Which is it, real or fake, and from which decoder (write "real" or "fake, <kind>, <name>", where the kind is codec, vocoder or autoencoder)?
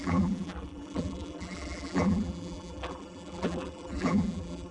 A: fake, vocoder, BigVGAN v2